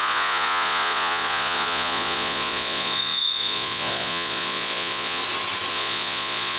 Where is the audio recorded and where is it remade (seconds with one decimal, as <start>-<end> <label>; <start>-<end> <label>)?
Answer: 0.0-5.2 remade; 5.2-5.7 recorded; 5.7-6.6 remade